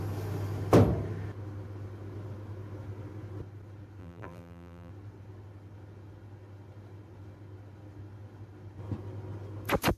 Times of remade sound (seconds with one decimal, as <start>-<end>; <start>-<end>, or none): 4.0-4.9